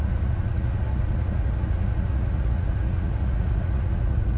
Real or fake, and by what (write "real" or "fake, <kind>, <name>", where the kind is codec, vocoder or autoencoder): fake, vocoder, Vocos